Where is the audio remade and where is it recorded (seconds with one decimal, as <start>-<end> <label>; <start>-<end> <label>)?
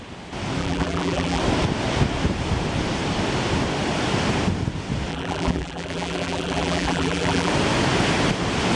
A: 0.0-0.6 recorded; 0.6-1.4 remade; 1.4-5.1 recorded; 5.1-7.5 remade; 7.5-8.8 recorded